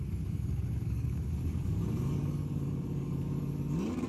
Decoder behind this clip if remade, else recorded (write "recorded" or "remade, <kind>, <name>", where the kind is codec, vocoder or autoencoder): remade, codec, DAC